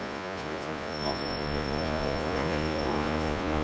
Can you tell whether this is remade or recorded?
remade